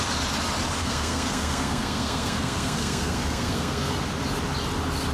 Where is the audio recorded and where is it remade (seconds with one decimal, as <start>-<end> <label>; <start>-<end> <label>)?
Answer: 0.0-0.8 recorded; 0.8-3.9 remade; 3.9-5.1 recorded